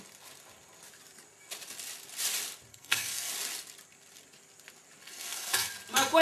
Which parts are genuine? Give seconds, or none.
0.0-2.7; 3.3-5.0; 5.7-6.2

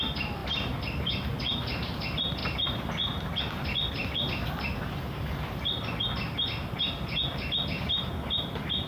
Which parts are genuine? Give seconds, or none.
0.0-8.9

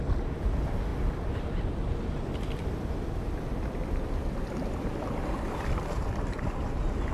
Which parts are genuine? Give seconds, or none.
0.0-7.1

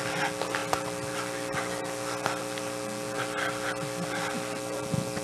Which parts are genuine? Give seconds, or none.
0.0-5.2

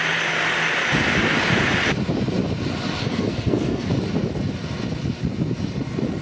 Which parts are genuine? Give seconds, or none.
0.0-3.0; 3.9-6.2

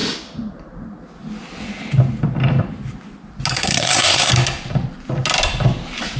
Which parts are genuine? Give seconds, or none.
0.0-3.5; 4.3-6.2